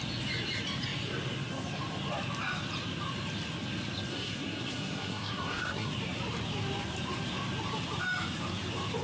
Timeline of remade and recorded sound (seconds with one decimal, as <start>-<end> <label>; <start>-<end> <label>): 0.0-4.1 recorded; 4.1-5.9 remade; 5.9-9.0 recorded